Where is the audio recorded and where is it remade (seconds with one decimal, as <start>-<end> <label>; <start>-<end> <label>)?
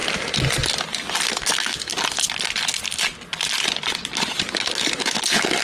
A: 0.0-1.3 recorded; 1.3-1.9 remade; 1.9-4.5 recorded; 4.5-5.6 remade